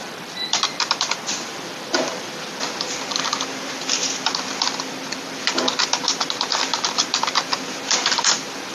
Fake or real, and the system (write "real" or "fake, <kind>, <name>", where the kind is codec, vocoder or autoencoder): fake, vocoder, BigVGAN v2